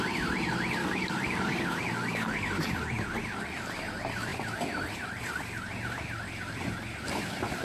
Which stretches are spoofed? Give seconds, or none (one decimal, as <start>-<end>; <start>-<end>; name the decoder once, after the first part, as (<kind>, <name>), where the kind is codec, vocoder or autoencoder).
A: 0.8-2.7 (codec, DAC)